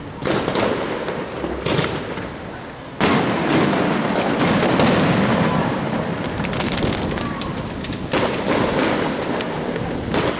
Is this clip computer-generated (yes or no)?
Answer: no